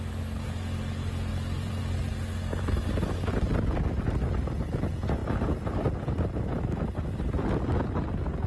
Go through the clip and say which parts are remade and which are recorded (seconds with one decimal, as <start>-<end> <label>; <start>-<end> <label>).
0.0-1.3 recorded; 1.3-1.8 remade; 1.8-8.5 recorded